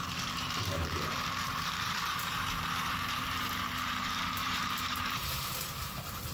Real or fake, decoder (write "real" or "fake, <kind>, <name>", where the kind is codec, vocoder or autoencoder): fake, vocoder, BigVGAN v2